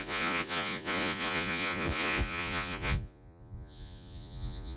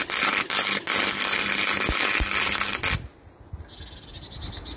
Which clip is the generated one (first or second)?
first